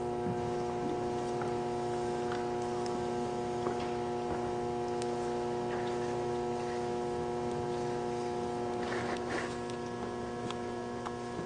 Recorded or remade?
recorded